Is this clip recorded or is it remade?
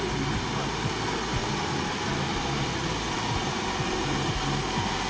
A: recorded